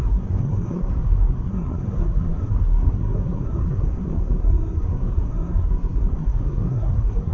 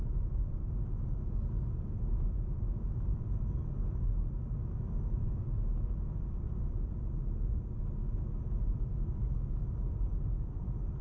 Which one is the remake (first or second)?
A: first